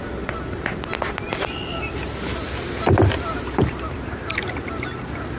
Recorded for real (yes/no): yes